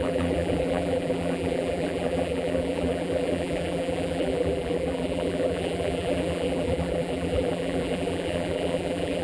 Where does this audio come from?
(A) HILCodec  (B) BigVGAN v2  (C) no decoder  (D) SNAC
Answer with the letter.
B